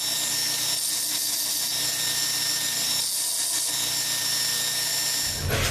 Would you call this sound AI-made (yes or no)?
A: no